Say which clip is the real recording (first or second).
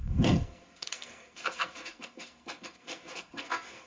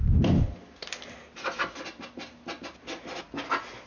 second